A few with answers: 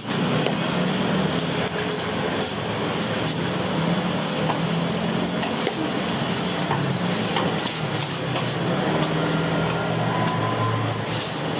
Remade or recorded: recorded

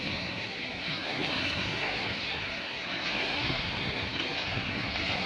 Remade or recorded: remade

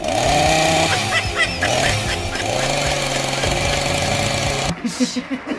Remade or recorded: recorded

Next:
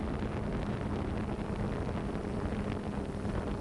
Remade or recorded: recorded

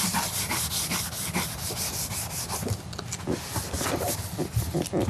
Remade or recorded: recorded